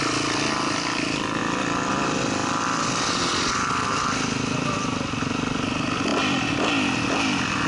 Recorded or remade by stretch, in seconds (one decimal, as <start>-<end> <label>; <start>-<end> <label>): 0.0-7.7 recorded